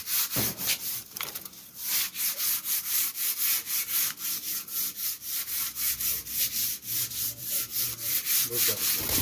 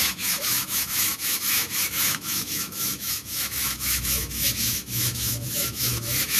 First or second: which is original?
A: first